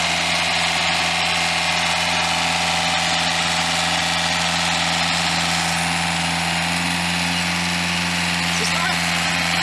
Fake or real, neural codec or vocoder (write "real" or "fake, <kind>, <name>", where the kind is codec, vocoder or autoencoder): real